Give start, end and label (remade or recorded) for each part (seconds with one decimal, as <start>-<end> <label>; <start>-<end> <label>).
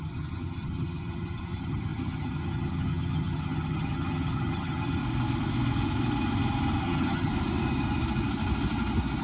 0.0-5.0 remade; 5.0-6.8 recorded; 6.8-7.3 remade; 7.3-9.2 recorded